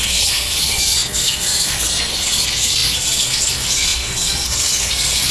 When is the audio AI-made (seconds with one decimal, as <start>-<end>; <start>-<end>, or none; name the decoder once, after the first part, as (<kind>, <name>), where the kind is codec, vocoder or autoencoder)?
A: 0.0-5.3 (codec, SNAC)